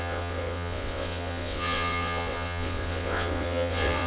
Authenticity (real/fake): fake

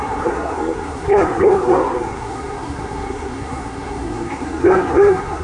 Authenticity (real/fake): fake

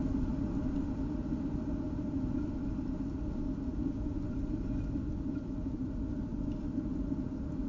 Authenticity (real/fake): real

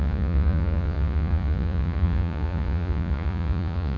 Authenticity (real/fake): fake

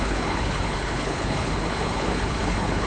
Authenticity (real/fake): fake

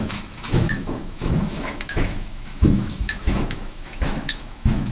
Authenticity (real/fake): fake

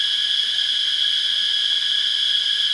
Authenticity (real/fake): real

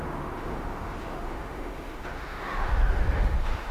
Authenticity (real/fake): fake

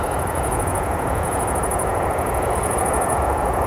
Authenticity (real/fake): fake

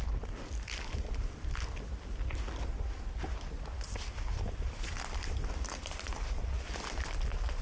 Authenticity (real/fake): real